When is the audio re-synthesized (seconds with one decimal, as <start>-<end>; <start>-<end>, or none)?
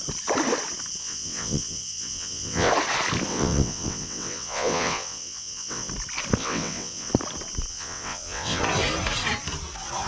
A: 1.0-2.7; 3.3-5.9; 6.4-7.1; 7.7-8.6